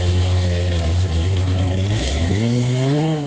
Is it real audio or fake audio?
fake